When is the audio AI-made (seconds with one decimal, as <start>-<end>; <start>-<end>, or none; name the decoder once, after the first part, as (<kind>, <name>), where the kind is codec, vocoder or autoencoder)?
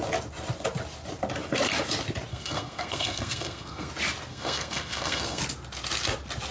2.3-3.9 (codec, SNAC); 4.3-5.4